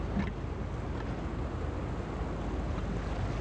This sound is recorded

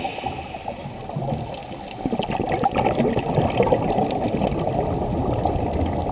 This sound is recorded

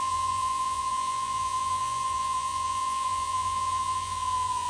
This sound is remade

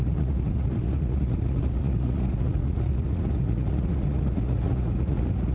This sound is remade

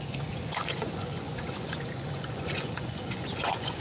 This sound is remade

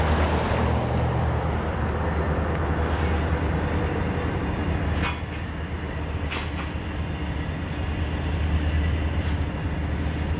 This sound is recorded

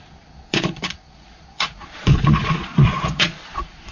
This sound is remade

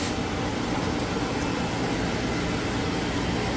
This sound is recorded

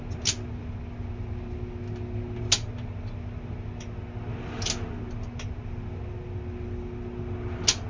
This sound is recorded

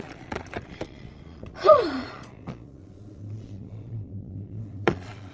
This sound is remade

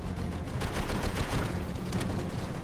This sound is remade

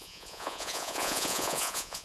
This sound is remade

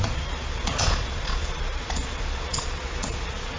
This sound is remade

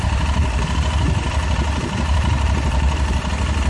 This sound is recorded